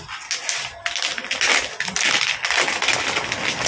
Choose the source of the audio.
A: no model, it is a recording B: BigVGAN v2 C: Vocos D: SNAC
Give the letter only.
A